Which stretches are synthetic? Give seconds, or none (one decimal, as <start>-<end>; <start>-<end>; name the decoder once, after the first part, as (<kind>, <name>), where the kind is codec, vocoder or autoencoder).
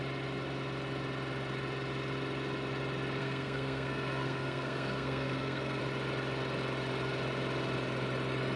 3.2-5.8 (codec, SNAC)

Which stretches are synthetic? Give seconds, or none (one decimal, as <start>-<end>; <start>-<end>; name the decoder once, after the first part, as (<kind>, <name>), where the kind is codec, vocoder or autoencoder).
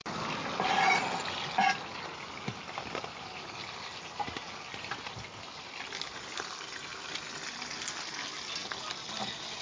none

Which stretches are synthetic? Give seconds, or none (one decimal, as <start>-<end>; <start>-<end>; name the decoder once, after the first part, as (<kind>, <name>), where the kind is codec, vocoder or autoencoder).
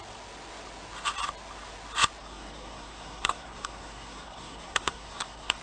2.2-5.6 (codec, SNAC)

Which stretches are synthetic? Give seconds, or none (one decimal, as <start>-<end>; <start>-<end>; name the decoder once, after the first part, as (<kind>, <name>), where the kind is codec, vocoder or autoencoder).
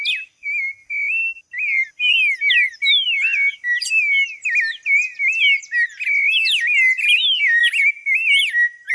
none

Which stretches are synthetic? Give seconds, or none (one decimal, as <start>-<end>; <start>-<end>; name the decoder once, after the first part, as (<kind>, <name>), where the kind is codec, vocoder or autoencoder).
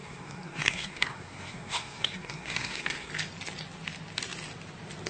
0.0-3.1 (codec, SNAC)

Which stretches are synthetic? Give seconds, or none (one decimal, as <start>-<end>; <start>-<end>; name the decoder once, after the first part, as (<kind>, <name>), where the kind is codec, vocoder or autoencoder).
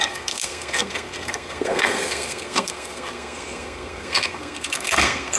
0.0-5.4 (codec, SNAC)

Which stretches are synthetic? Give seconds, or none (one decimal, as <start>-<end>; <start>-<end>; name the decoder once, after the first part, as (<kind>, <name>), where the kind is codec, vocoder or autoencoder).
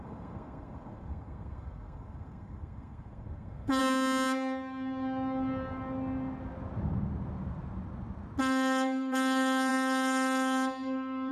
0.0-3.8 (codec, SNAC); 8.4-11.3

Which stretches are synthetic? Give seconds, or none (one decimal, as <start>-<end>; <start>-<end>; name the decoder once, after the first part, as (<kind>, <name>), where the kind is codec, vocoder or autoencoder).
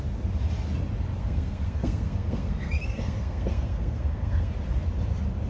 1.2-4.5 (codec, SNAC)